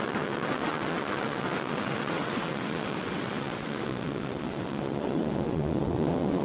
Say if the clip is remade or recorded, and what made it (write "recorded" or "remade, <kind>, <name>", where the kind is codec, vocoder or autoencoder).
remade, vocoder, WaveNeXt